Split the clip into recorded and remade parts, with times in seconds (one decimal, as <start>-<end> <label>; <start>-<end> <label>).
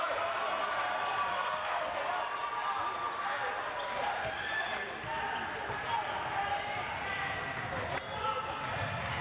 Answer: 0.0-1.3 recorded; 1.3-1.8 remade; 1.8-9.2 recorded